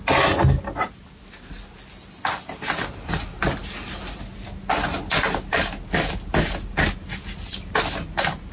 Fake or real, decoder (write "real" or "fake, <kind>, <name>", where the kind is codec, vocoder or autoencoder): real